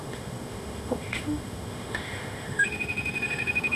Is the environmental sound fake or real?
fake